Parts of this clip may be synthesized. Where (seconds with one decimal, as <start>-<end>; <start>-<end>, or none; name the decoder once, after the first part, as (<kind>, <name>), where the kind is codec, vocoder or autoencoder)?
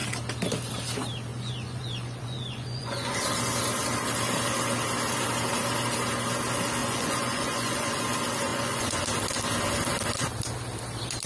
1.3-3.2 (vocoder, Vocos); 6.8-8.0; 8.5-9.0